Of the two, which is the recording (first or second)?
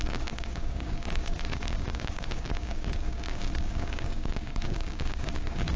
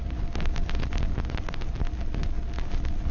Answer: second